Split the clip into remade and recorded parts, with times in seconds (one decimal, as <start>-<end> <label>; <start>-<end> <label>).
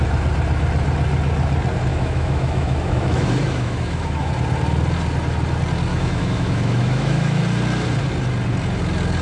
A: 0.0-1.9 recorded; 1.9-4.3 remade; 4.3-5.9 recorded; 5.9-7.4 remade; 7.4-9.2 recorded